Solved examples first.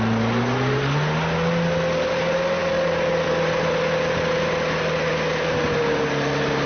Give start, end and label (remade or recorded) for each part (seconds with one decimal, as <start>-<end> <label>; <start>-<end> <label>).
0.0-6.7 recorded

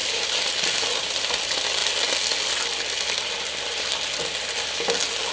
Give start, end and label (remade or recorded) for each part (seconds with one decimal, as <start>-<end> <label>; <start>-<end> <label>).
0.0-5.3 recorded

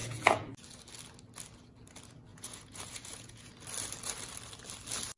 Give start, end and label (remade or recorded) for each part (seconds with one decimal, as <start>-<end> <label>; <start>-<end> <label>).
0.0-0.5 remade; 0.5-2.3 recorded; 2.3-3.5 remade; 3.5-5.2 recorded

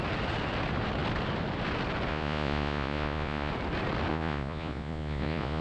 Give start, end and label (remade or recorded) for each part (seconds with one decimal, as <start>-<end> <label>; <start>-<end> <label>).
0.0-2.1 recorded; 2.1-3.5 remade; 3.5-4.1 recorded; 4.1-5.6 remade